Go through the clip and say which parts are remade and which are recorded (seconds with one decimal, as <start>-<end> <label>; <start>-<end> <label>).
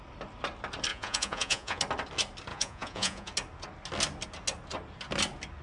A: 0.0-0.9 recorded; 0.9-1.8 remade; 1.8-2.5 recorded; 2.5-3.3 remade; 3.3-5.6 recorded